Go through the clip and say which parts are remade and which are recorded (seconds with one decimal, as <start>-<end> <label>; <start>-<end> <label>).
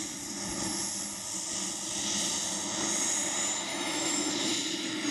0.0-3.7 recorded; 3.7-4.3 remade; 4.3-5.1 recorded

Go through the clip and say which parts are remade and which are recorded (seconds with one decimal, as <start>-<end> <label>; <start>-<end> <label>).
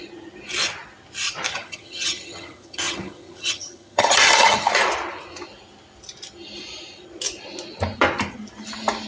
0.0-1.5 recorded; 1.5-4.7 remade; 4.7-9.1 recorded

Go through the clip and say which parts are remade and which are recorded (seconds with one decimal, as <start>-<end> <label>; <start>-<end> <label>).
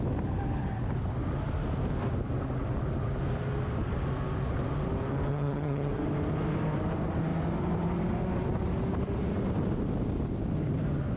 0.0-5.3 recorded; 5.3-5.9 remade; 5.9-11.2 recorded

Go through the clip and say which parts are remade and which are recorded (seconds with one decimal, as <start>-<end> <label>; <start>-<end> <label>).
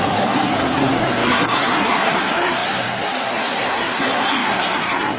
0.0-5.2 remade